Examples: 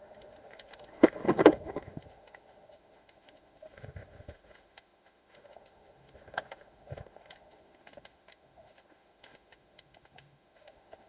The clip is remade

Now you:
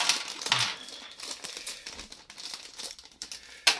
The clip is recorded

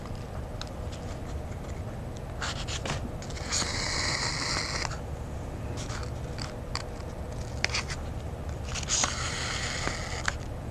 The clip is recorded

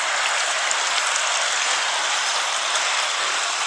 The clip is recorded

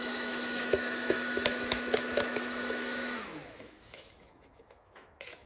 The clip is remade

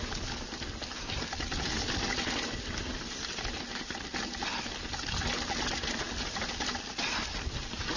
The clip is recorded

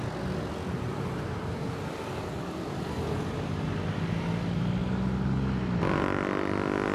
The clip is recorded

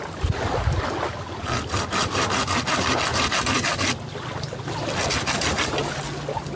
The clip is recorded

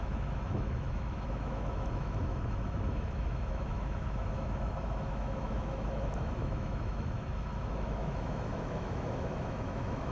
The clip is remade